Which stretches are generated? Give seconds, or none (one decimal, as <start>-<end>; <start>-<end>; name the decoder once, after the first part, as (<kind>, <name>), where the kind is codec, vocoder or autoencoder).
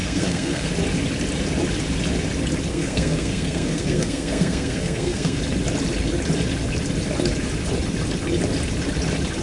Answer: 0.0-0.7 (codec, SNAC); 2.7-5.4